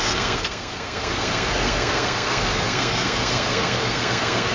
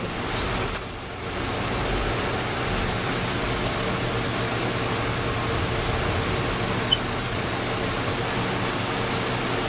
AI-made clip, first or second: first